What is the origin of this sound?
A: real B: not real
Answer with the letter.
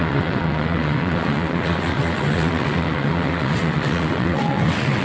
B